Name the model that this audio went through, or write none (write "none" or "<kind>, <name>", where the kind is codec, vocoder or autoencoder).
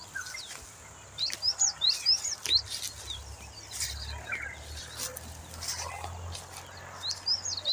none